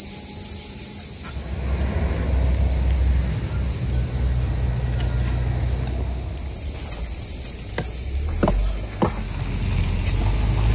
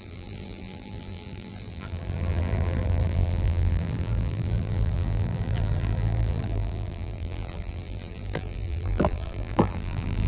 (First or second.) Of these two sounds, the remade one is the second